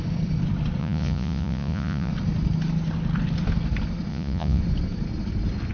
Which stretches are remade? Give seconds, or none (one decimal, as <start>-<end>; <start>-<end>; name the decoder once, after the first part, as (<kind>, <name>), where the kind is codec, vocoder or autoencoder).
0.8-2.1 (vocoder, Vocos); 4.1-4.6